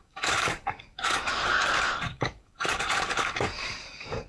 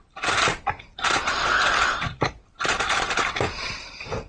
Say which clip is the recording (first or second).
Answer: second